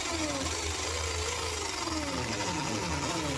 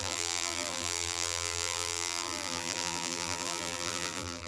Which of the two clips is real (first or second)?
first